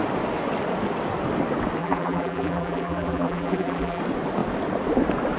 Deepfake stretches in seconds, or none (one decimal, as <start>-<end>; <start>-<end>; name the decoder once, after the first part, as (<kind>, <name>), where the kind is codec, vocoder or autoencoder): 1.8-4.0 (vocoder, BigVGAN v2)